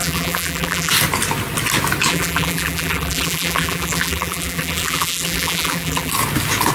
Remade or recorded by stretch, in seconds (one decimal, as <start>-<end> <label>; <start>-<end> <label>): 0.0-0.9 remade; 0.9-2.1 recorded; 2.1-6.1 remade; 6.1-6.7 recorded